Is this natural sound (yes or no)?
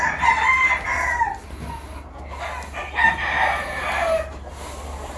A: yes